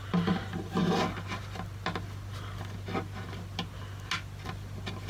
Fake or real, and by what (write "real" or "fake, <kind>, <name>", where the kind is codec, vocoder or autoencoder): real